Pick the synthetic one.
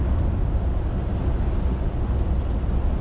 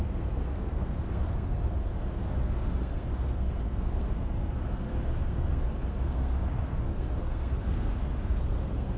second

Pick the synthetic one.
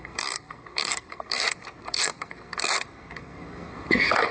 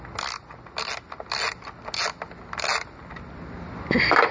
first